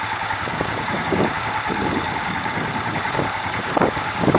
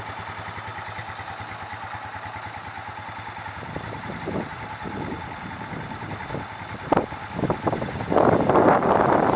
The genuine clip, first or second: second